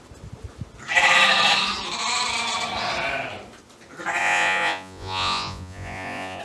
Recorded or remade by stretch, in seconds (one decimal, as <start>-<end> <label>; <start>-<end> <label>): 0.0-4.2 recorded; 4.2-6.4 remade